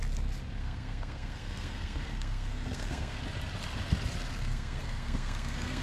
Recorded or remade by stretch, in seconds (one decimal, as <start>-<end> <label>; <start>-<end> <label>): 0.0-0.6 recorded; 0.6-3.2 remade; 3.2-4.3 recorded; 4.3-5.8 remade